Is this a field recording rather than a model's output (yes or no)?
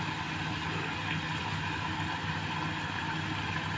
yes